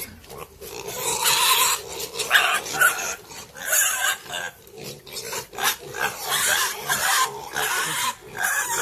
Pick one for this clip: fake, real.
real